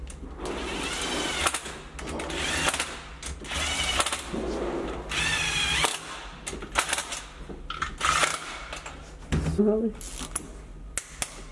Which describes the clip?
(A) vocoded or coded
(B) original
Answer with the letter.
B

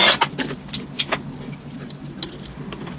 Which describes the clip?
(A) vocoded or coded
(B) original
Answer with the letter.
B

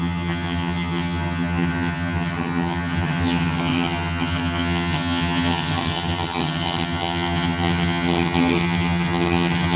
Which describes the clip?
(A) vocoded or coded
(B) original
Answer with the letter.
A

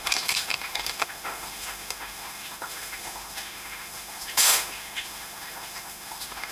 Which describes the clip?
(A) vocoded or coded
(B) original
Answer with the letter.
A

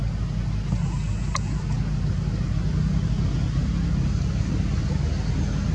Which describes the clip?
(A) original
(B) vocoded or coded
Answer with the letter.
A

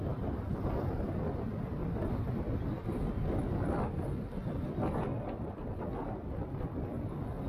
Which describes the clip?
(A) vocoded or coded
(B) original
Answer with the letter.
B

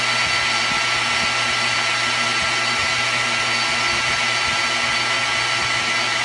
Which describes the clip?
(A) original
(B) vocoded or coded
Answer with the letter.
A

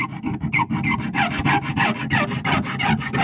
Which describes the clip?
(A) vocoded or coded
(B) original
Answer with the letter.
B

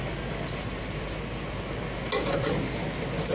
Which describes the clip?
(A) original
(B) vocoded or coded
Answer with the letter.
A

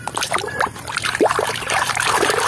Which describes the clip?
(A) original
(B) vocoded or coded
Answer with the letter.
B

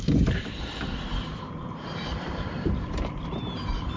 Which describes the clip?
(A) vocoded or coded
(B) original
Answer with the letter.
A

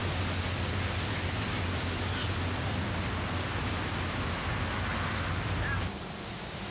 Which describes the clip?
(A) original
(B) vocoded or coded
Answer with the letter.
A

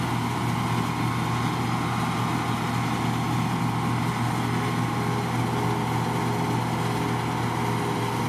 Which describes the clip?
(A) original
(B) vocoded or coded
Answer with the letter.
A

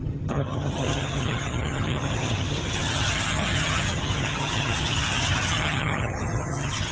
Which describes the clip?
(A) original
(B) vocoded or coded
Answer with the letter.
B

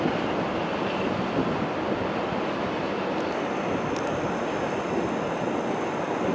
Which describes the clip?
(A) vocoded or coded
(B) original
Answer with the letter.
B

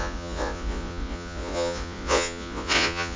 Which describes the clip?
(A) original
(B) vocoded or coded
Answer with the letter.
B